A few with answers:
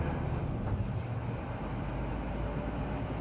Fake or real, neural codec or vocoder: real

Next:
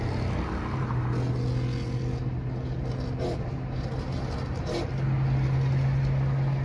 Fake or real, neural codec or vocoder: real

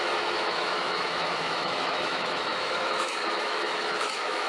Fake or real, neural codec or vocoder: fake, autoencoder, DAC-VAE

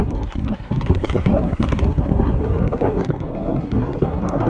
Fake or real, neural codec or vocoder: fake, codec, SNAC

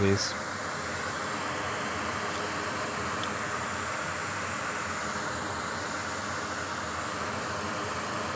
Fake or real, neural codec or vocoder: real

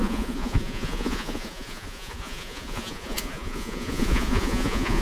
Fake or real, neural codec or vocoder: fake, vocoder, Vocos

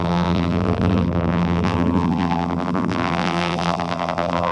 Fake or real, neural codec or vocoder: fake, vocoder, BigVGAN v2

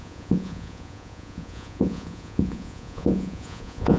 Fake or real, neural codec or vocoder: fake, vocoder, Vocos